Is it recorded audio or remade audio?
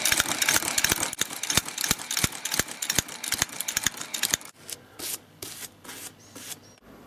recorded